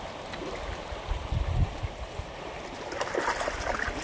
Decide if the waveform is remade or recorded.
recorded